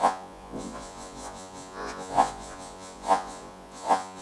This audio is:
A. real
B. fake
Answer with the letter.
B